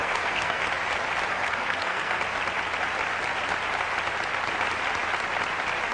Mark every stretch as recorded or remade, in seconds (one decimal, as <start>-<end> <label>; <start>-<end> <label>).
0.0-0.6 remade; 0.6-1.3 recorded; 1.3-2.2 remade; 2.2-5.9 recorded